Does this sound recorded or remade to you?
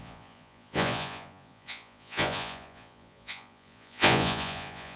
remade